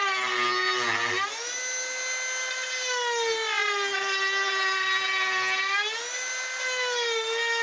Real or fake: real